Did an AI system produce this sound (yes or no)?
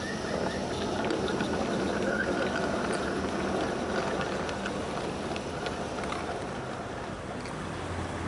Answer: no